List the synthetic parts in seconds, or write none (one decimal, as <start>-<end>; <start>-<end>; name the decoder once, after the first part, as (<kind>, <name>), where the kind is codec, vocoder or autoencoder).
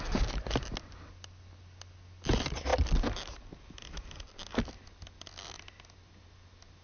none